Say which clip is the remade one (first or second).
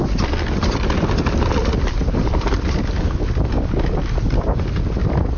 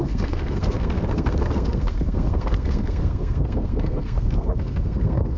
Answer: second